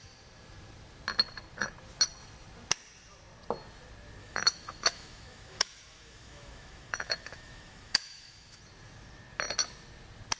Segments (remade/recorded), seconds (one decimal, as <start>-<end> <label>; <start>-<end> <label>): 0.0-4.2 recorded; 4.2-8.6 remade; 8.6-10.4 recorded